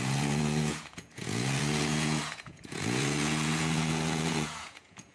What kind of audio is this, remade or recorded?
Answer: remade